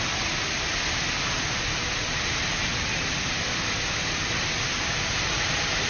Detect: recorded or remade recorded